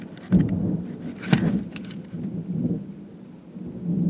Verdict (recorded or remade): recorded